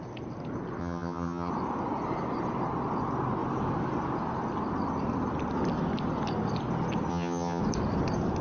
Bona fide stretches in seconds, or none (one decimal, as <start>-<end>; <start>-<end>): 0.0-0.8; 1.5-7.1; 7.6-8.4